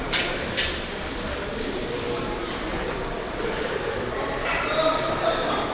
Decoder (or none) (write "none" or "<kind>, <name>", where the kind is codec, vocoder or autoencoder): vocoder, BigVGAN v2